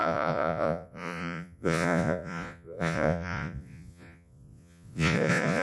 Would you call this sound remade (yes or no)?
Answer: yes